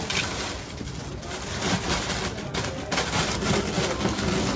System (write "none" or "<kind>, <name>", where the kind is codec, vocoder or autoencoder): none